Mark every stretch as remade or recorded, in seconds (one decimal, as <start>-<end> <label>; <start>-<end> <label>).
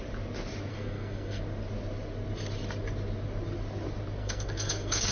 0.0-0.7 recorded; 0.7-1.4 remade; 1.4-4.2 recorded; 4.2-5.1 remade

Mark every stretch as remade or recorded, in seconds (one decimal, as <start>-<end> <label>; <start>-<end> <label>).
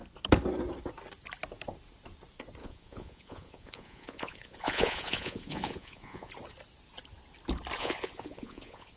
0.0-2.6 recorded; 2.6-6.3 remade; 6.3-7.8 recorded; 7.8-9.0 remade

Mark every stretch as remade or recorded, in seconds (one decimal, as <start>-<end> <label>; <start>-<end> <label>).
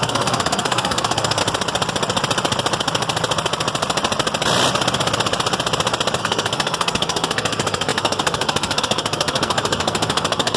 0.0-1.4 remade; 1.4-6.2 recorded; 6.2-10.6 remade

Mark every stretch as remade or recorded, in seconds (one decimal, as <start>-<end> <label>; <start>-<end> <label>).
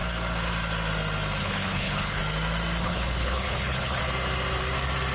0.0-1.4 recorded; 1.4-2.2 remade; 2.2-2.8 recorded; 2.8-4.0 remade; 4.0-5.1 recorded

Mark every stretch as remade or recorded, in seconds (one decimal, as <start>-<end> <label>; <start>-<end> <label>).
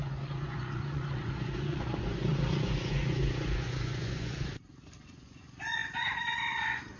0.0-4.5 remade; 4.5-5.0 recorded; 5.0-7.0 remade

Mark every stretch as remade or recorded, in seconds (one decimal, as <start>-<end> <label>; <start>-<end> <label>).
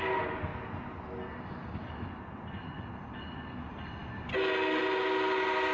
0.0-5.7 recorded